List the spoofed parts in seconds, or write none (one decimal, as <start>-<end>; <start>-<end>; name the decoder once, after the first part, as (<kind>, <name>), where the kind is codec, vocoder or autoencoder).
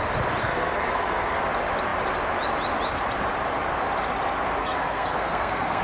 0.4-1.4 (codec, SNAC); 4.6-5.8